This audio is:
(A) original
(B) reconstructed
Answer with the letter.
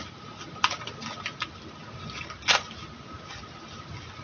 A